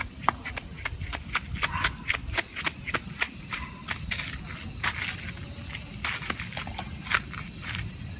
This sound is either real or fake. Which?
real